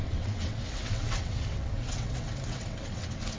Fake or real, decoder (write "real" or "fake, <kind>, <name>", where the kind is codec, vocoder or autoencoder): fake, vocoder, WaveNeXt